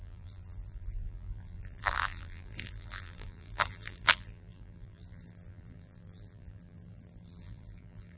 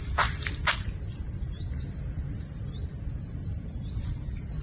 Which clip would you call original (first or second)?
second